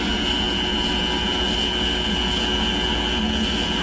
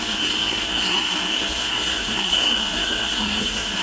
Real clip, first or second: first